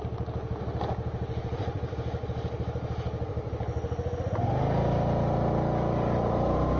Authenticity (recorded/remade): recorded